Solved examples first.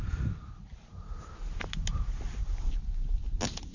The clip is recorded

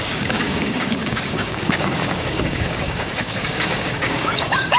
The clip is remade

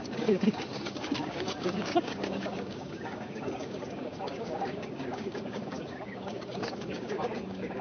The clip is remade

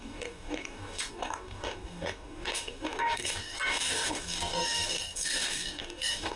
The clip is remade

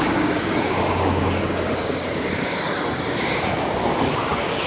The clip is remade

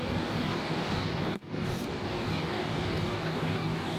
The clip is remade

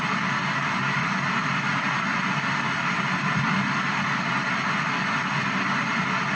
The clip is recorded